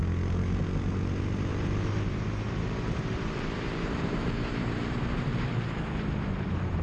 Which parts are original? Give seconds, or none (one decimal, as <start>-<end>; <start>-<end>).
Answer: 0.0-1.5; 5.6-6.8